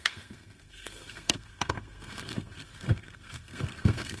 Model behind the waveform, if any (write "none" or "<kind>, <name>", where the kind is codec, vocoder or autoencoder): codec, SNAC